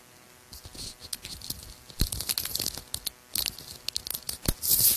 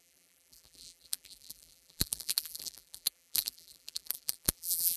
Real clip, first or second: first